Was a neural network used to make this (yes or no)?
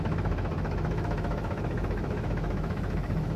yes